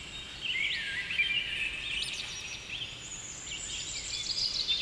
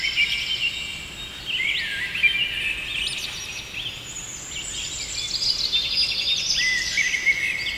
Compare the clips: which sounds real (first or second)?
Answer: second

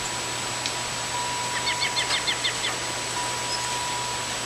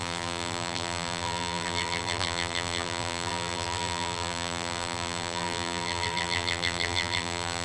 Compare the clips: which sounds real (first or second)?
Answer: first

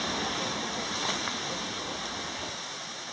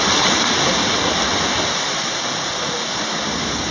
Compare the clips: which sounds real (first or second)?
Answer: first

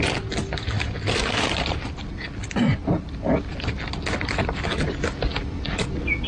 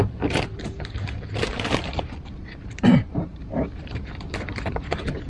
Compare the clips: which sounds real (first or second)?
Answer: first